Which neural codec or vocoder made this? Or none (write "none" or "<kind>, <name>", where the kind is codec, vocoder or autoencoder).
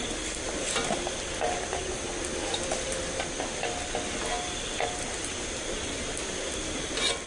none